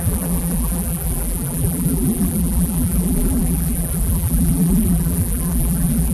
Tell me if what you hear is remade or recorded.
remade